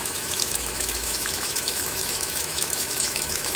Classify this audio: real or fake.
fake